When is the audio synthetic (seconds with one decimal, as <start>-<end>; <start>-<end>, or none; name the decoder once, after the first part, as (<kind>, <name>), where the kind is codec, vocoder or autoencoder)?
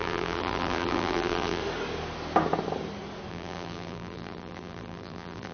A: 0.0-1.6 (vocoder, BigVGAN v2); 3.3-5.5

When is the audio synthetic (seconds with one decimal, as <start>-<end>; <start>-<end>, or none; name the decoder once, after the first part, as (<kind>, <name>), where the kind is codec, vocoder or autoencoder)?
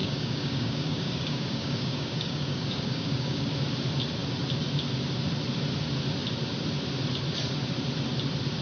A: 0.0-3.5 (codec, DAC)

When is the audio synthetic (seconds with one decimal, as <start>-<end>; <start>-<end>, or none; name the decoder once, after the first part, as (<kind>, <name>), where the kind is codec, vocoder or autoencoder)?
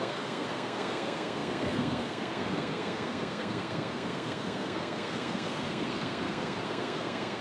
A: 0.0-7.4 (codec, SNAC)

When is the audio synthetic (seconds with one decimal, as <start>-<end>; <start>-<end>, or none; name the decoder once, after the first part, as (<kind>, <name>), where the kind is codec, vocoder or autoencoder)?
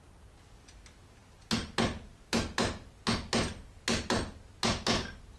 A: none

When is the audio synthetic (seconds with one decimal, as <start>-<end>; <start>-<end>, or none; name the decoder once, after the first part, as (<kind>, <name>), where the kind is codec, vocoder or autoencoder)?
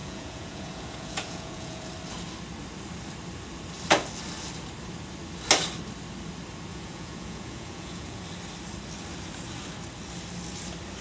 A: 0.0-1.9 (vocoder, Vocos); 6.7-8.2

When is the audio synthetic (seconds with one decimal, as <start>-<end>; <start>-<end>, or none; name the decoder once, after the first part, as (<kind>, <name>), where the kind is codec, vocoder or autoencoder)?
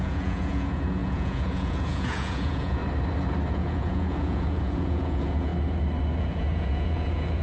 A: 0.0-2.8 (vocoder, Vocos); 3.5-5.5; 6.2-7.4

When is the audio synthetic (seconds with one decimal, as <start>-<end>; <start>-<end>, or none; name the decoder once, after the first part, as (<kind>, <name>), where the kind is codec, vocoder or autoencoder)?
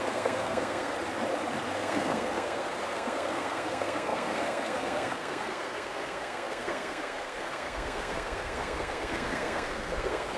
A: 0.0-0.9 (codec, SNAC); 1.7-10.4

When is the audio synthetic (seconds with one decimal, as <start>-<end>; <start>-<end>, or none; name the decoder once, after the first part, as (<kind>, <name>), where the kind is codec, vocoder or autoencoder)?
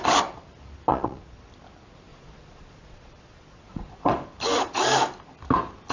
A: 0.9-1.4 (vocoder, Vocos); 2.1-4.1